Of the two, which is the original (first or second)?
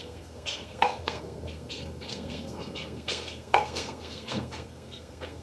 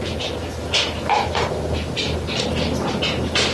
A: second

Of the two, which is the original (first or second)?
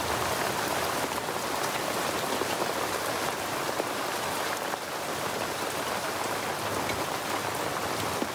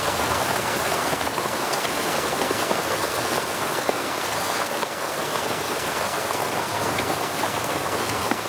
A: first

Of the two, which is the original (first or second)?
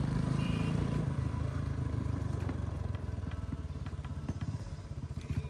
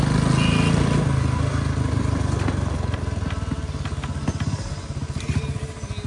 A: second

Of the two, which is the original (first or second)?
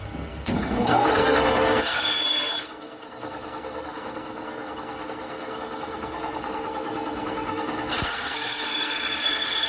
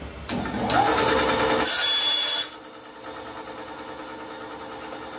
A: second